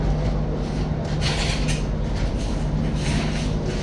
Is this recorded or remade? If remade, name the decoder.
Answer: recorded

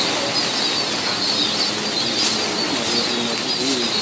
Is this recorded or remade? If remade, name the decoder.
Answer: recorded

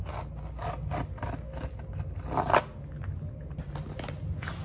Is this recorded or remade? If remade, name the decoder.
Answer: recorded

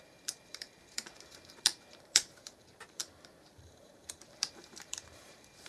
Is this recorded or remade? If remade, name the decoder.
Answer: remade, vocoder, BigVGAN v2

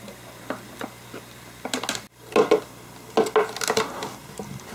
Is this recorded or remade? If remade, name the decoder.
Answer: recorded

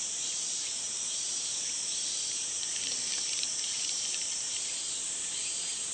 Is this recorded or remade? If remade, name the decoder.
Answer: remade, vocoder, BigVGAN v2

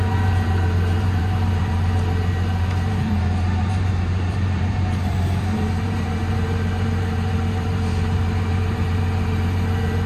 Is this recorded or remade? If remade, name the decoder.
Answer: remade, vocoder, BigVGAN v2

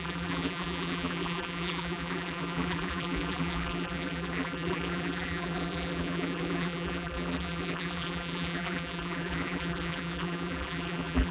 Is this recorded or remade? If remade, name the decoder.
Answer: remade, vocoder, BigVGAN v2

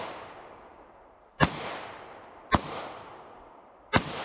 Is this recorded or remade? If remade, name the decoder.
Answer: remade, vocoder, BigVGAN v2